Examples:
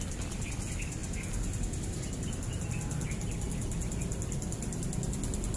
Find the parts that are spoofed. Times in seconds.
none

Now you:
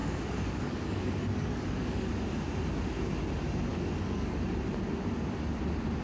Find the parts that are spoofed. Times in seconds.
0.0-2.1 (codec, DAC); 3.7-4.4